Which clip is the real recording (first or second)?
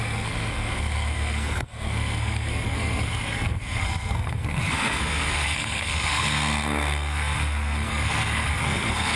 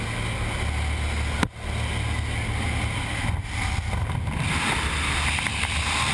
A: second